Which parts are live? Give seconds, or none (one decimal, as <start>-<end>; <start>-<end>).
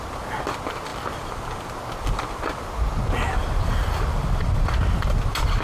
0.0-3.4; 4.7-5.6